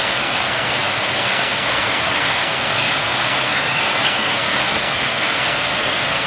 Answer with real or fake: fake